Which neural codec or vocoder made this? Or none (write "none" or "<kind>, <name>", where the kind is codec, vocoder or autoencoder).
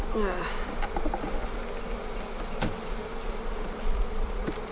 none